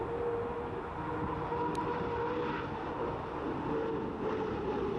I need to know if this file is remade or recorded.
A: recorded